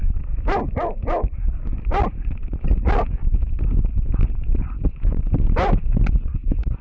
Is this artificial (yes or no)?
yes